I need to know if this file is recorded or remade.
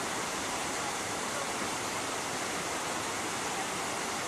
recorded